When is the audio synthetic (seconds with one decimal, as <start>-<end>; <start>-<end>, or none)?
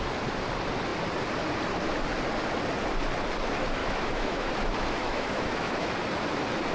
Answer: 3.8-4.5; 5.0-5.9